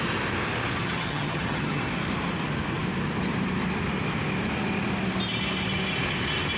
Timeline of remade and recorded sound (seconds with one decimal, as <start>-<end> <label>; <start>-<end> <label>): 0.0-0.8 recorded; 0.8-1.8 remade; 1.8-6.6 recorded